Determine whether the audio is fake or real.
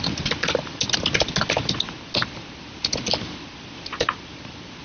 real